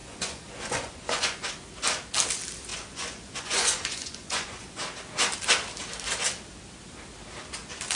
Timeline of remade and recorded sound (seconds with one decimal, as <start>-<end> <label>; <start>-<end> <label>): 0.0-1.5 remade; 1.5-2.7 recorded; 2.7-4.8 remade; 4.8-8.0 recorded